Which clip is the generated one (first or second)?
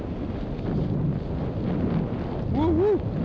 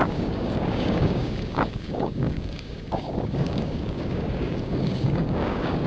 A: second